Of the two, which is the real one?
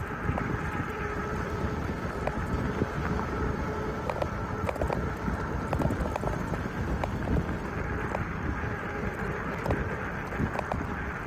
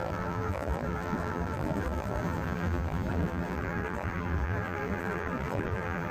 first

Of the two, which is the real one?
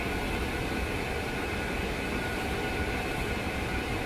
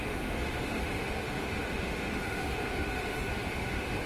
first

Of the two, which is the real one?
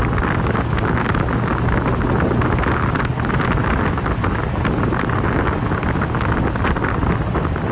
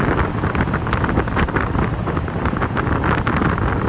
first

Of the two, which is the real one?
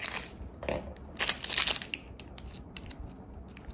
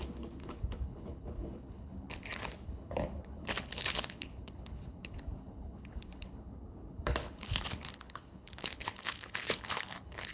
first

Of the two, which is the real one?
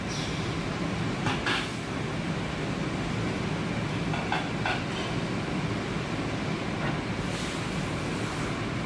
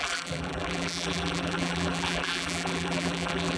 first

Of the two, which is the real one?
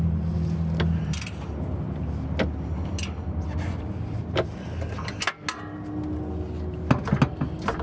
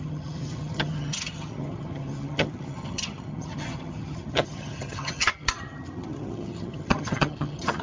first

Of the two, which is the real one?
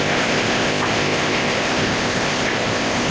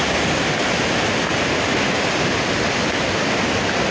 second